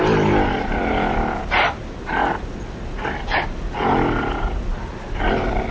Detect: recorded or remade recorded